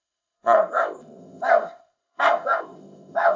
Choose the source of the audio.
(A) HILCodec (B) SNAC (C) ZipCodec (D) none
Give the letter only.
C